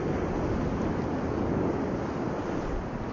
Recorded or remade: recorded